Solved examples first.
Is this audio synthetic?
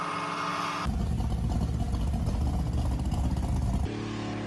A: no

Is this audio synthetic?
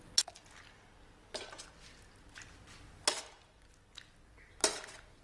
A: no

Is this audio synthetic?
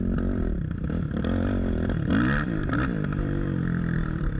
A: yes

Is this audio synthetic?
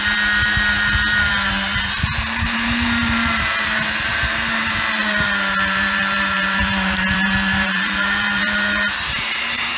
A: yes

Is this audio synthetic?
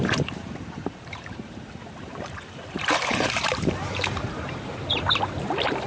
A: yes